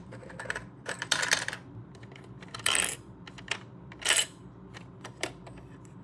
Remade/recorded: remade